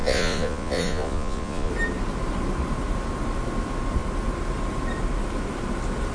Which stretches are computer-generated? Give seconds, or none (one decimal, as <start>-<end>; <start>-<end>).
0.0-1.7